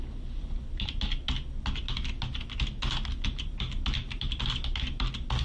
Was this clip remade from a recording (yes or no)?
no